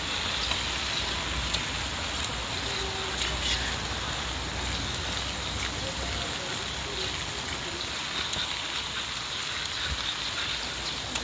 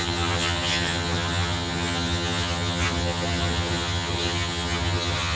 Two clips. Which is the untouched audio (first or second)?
first